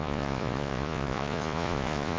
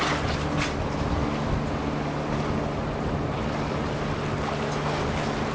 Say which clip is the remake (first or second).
first